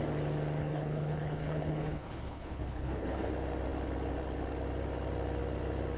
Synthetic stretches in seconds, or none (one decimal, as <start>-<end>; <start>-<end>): 0.6-3.3